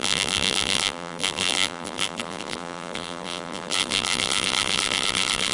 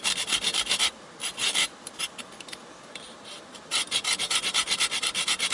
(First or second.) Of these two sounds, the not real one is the first